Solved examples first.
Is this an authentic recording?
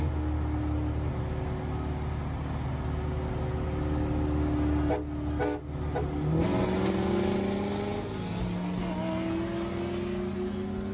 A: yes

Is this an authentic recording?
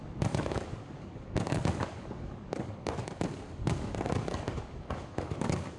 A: no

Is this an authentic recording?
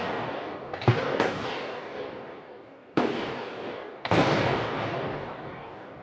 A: no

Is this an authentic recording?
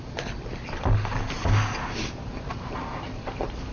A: yes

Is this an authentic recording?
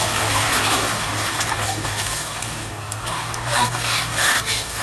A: no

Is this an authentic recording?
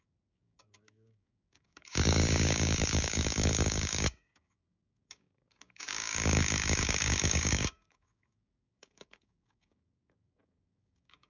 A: no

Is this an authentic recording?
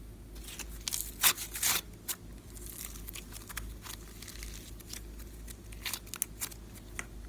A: yes